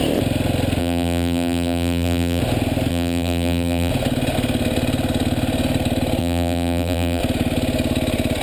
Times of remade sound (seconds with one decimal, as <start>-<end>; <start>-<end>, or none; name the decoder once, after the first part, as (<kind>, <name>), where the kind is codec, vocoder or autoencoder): 0.8-2.4 (vocoder, BigVGAN v2); 2.9-3.9; 6.2-7.2